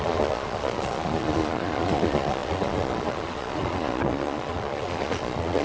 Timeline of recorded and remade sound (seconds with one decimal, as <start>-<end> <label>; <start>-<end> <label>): 0.0-5.6 remade